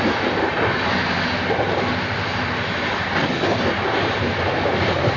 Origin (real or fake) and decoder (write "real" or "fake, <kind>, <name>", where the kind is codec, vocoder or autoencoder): real